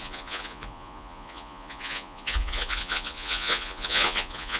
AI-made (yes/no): yes